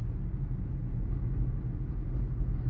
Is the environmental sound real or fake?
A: real